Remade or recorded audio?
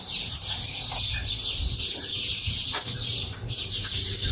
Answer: remade